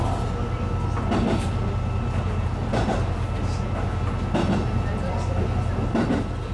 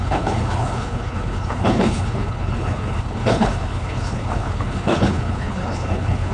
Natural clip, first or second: first